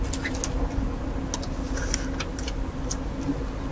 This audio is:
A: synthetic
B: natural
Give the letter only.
B